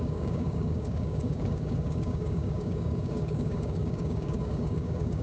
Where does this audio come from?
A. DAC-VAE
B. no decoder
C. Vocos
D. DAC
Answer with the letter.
D